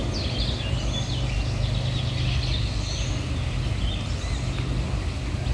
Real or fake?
real